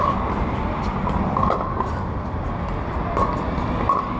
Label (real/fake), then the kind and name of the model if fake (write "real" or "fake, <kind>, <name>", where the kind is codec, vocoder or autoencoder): real